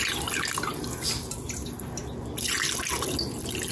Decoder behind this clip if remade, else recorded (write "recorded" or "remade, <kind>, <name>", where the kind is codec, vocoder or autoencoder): recorded